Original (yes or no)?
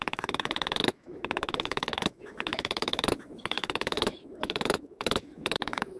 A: no